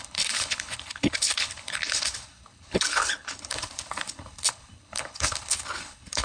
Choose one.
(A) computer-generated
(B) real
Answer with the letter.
A